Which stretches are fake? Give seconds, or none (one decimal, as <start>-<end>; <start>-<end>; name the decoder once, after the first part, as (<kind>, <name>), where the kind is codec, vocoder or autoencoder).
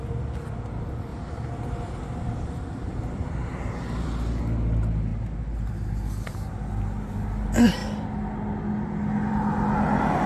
1.1-4.4 (vocoder, BigVGAN v2); 5.1-5.7